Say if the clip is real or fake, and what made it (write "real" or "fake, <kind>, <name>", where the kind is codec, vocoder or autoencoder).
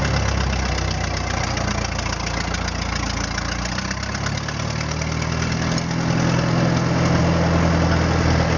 real